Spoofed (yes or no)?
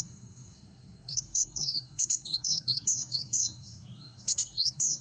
yes